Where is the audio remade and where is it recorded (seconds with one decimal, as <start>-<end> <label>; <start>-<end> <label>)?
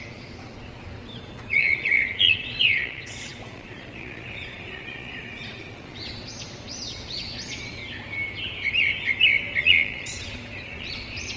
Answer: 0.0-7.8 remade; 7.8-9.6 recorded; 9.6-11.4 remade